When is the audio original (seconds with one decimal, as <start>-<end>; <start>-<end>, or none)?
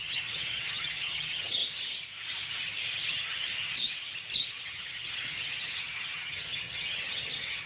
1.6-3.1; 3.5-4.4